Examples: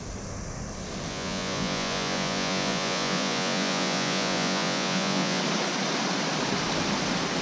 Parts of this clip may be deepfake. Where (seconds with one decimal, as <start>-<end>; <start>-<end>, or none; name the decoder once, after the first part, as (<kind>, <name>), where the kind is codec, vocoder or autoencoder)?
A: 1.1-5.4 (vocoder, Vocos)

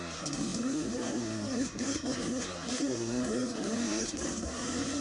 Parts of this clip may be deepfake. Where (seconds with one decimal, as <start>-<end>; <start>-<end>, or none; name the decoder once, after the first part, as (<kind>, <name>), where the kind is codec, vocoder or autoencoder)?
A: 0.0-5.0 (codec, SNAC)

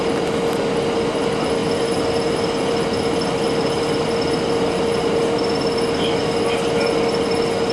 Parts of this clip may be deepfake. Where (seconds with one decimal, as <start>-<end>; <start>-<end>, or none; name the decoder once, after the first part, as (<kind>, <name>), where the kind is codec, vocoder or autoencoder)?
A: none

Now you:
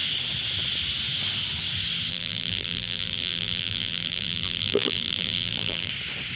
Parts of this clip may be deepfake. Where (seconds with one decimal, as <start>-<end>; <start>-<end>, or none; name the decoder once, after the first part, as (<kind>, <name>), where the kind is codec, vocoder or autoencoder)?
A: 2.1-5.9 (vocoder, BigVGAN v2)

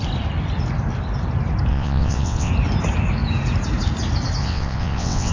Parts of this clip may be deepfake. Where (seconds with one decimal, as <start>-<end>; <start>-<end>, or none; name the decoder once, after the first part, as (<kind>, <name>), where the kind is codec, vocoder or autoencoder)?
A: 1.7-2.5 (vocoder, WaveNeXt); 4.4-5.3

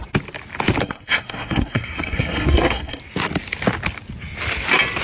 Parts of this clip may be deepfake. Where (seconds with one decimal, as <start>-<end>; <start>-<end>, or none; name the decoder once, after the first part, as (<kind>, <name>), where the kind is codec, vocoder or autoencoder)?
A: 0.8-3.0 (codec, SNAC)